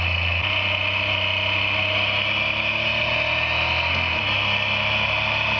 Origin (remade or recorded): recorded